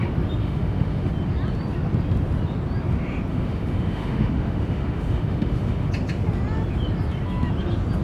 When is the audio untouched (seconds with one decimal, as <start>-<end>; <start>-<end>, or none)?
0.0-0.4; 1.1-3.3; 5.9-8.0